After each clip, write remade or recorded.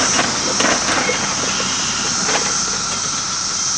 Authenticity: recorded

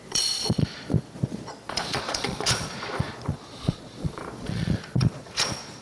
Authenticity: remade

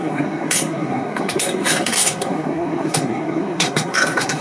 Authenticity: remade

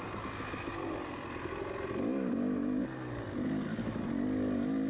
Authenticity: recorded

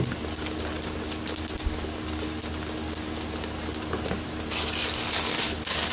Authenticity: recorded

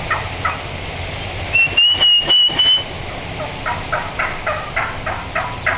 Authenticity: recorded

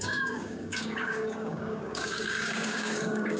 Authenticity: remade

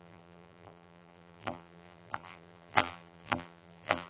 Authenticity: remade